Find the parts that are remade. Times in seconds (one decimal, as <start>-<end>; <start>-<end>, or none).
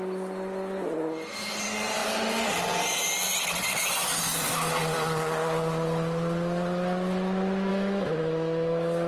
7.7-9.1